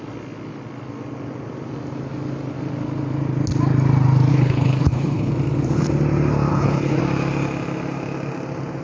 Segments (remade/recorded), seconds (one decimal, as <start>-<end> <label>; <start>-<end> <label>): 0.0-4.3 recorded; 4.3-5.3 remade; 5.3-6.5 recorded; 6.5-7.0 remade; 7.0-8.8 recorded